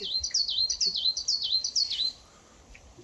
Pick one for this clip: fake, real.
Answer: fake